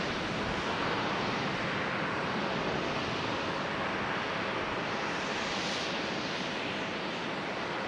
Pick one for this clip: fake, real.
real